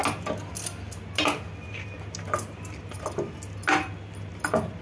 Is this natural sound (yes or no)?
yes